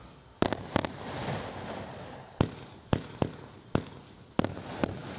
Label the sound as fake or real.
real